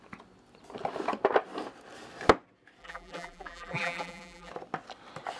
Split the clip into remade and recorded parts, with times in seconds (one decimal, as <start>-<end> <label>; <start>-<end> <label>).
0.0-2.8 recorded; 2.8-4.5 remade; 4.5-5.4 recorded